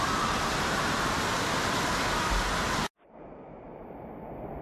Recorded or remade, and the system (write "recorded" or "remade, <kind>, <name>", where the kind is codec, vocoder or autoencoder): recorded